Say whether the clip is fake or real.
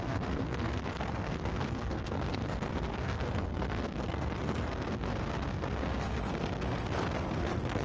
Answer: fake